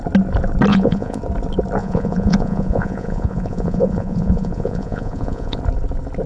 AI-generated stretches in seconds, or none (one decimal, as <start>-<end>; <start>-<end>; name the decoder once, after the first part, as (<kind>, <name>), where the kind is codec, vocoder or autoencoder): 0.7-1.2 (vocoder, Vocos); 1.8-5.6